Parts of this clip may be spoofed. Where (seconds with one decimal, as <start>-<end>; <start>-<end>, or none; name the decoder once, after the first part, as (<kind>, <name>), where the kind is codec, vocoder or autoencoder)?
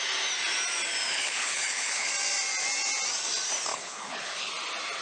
1.1-2.1 (codec, HILCodec); 3.7-4.5